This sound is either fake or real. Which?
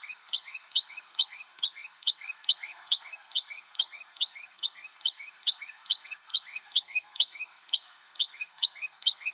fake